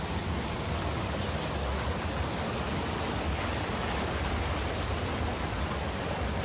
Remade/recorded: recorded